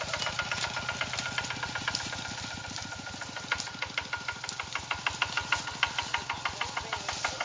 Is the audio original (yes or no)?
yes